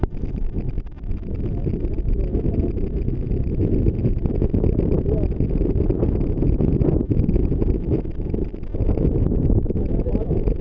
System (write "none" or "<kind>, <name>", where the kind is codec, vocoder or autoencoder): none